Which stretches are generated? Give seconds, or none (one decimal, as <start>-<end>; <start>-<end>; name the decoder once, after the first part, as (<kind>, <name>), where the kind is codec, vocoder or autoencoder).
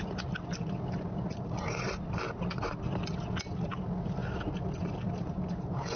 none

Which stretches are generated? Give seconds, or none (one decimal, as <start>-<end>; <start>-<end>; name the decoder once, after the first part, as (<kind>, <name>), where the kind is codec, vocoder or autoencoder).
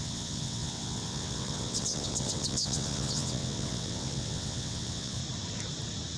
0.0-5.2 (vocoder, WaveNeXt)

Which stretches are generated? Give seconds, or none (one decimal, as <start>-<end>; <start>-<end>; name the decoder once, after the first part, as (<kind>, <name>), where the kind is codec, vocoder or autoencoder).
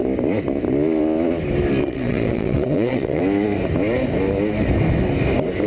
1.8-3.2 (vocoder, WaveNeXt)